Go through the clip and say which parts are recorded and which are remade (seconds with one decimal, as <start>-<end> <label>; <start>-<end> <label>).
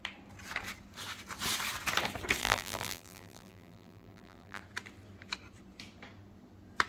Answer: 0.0-2.4 recorded; 2.4-4.6 remade; 4.6-6.9 recorded